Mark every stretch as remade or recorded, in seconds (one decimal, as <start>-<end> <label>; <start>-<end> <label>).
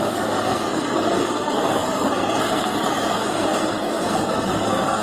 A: 0.0-5.0 remade